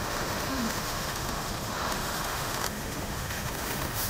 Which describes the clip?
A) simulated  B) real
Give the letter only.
A